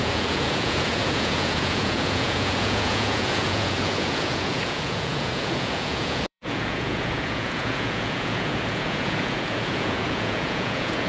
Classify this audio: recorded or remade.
remade